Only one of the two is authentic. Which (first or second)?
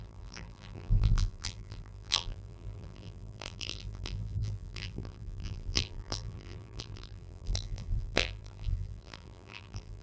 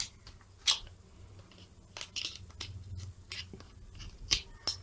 second